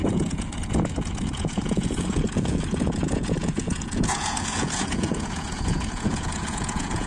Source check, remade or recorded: remade